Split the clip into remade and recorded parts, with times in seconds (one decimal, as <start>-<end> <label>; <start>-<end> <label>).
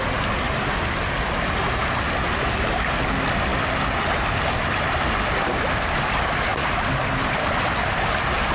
0.0-8.5 recorded